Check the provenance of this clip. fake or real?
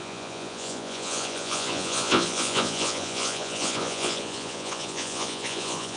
fake